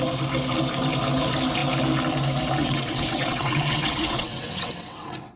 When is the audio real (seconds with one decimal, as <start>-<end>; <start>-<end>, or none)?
0.0-2.6